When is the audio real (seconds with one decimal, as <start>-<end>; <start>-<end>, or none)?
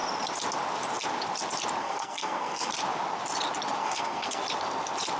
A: 0.0-1.8; 2.7-3.8; 4.4-5.2